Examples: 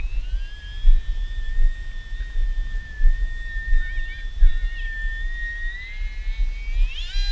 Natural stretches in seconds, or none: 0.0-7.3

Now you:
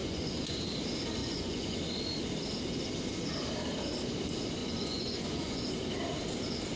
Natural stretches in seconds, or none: 0.6-1.2; 1.8-4.6; 5.6-6.8